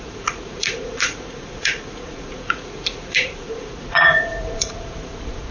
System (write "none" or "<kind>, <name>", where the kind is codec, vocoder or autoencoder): vocoder, Vocos